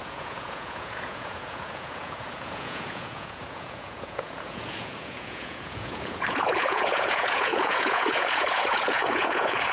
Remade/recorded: remade